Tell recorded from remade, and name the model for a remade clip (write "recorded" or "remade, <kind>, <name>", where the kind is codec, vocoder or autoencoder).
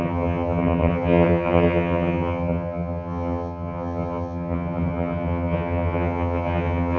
remade, vocoder, HiFi-GAN